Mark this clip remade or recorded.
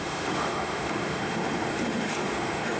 remade